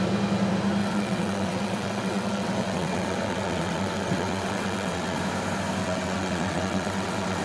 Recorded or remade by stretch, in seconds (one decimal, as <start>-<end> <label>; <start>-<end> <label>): 0.0-0.8 recorded; 0.8-5.2 remade; 5.2-5.8 recorded; 5.8-7.4 remade